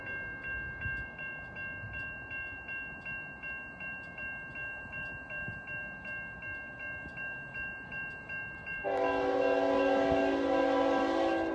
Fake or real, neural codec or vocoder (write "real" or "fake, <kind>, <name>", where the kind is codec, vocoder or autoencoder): real